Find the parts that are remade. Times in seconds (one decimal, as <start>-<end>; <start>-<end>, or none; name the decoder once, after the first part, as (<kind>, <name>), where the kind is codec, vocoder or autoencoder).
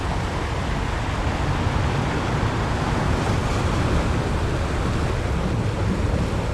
none